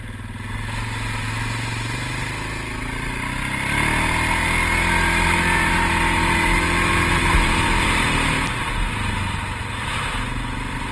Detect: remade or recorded recorded